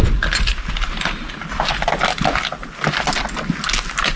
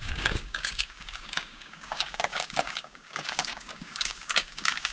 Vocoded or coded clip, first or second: second